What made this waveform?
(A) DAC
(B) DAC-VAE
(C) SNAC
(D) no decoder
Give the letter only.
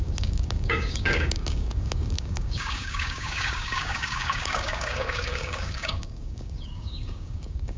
A